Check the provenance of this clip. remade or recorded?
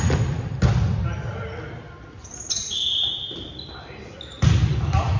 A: recorded